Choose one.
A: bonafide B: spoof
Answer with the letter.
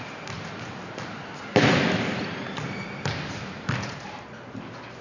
A